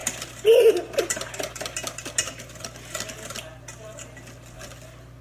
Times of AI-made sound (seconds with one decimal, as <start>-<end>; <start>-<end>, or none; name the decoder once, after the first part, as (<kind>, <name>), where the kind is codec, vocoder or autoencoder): none